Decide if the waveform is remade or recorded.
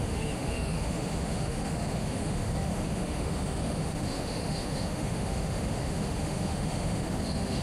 remade